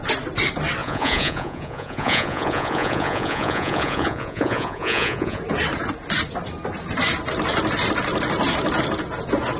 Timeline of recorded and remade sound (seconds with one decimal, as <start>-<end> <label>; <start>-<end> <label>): 0.0-0.8 recorded; 0.8-5.4 remade; 5.4-9.6 recorded